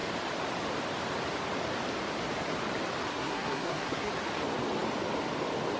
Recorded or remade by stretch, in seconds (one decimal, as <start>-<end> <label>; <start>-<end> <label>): 0.0-3.1 recorded; 3.1-4.1 remade; 4.1-5.8 recorded